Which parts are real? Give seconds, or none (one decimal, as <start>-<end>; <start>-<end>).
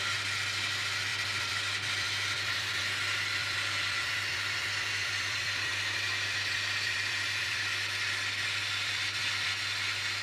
0.0-1.1; 2.8-3.4; 7.6-8.6; 9.5-10.2